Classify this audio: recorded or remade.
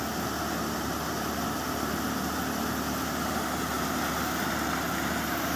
recorded